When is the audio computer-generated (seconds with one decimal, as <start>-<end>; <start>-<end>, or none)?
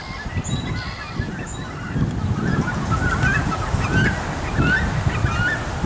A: none